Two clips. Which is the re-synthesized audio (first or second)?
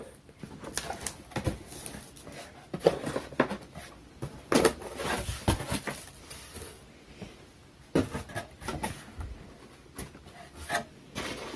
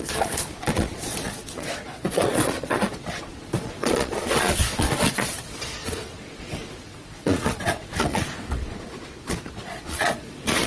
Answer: second